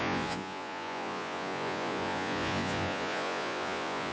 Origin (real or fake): fake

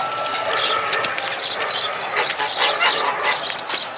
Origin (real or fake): real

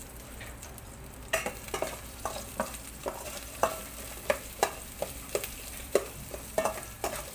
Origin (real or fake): fake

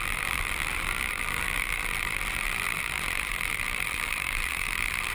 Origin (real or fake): fake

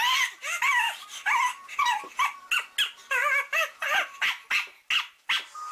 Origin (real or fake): real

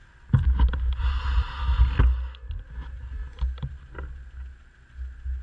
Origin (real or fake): real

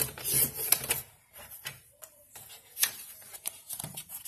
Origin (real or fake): fake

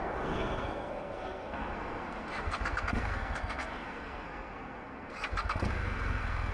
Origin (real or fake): fake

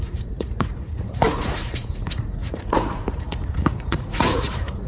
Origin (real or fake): fake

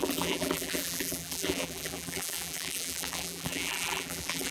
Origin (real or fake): fake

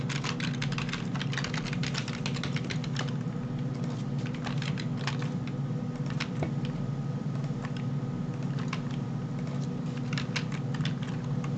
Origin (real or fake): real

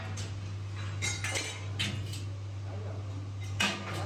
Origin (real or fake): real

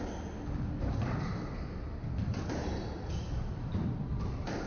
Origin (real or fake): real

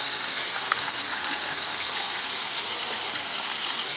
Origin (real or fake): fake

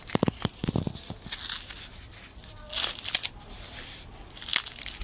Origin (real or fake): real